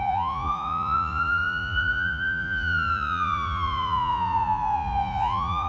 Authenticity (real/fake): fake